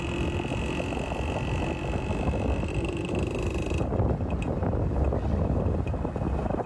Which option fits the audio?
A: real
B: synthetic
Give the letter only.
A